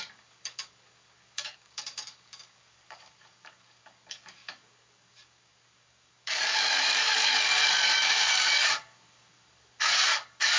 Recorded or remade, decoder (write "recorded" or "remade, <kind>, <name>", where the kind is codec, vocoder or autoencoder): remade, codec, DAC